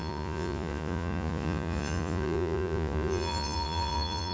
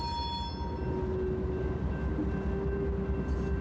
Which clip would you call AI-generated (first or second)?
first